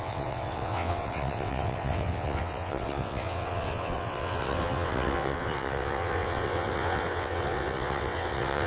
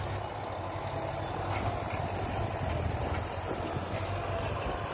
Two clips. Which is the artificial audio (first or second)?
first